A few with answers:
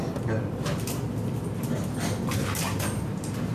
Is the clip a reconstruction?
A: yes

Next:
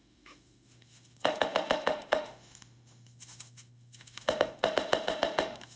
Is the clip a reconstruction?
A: yes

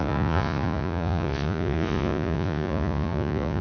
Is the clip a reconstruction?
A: yes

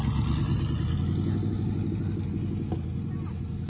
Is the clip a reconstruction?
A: no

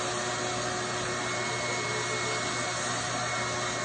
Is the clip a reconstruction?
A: no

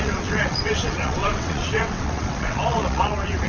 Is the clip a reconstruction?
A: yes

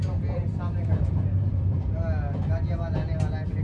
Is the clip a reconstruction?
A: no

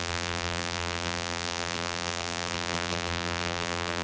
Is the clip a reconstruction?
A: yes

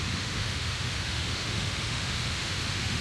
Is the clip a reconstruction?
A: yes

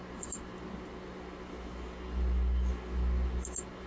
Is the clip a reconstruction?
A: no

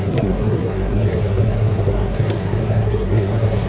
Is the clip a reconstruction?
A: yes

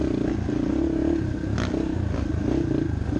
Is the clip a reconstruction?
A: no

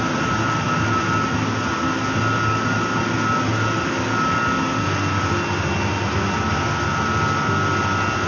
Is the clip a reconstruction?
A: no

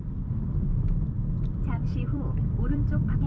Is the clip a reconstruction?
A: yes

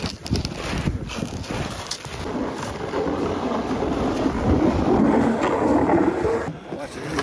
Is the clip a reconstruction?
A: no